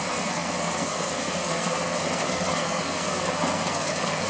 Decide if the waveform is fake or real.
fake